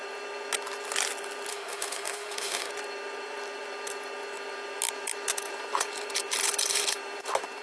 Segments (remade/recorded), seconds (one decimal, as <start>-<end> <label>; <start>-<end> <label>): 0.0-1.5 recorded; 1.5-2.7 remade; 2.7-7.6 recorded